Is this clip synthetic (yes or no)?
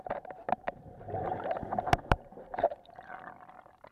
yes